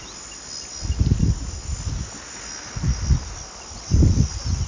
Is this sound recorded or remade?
recorded